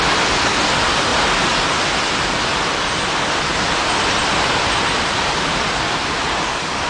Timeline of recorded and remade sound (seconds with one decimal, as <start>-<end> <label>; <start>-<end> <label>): 0.0-6.9 recorded